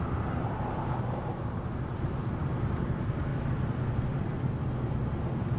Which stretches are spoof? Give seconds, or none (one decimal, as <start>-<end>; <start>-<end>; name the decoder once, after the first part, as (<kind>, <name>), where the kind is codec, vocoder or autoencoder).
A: 0.0-2.2 (vocoder, BigVGAN v2); 2.8-3.3